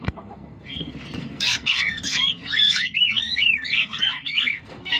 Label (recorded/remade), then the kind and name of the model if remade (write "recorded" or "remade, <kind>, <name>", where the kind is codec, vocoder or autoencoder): remade, codec, SNAC